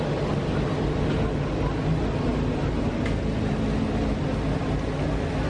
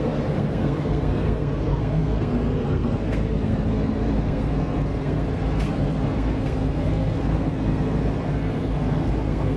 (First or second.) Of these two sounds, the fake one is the second